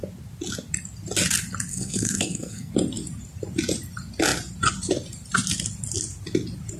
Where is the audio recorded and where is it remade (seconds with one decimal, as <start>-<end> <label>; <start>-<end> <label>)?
0.0-1.7 recorded; 1.7-2.7 remade; 2.7-6.8 recorded